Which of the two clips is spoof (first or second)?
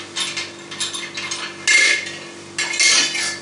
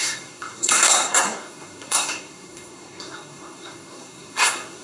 second